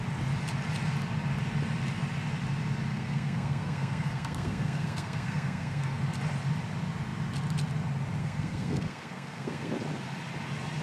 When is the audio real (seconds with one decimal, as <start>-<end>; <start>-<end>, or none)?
0.0-2.9; 6.0-8.2; 9.7-10.8